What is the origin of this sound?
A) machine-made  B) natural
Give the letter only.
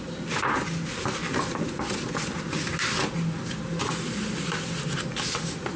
B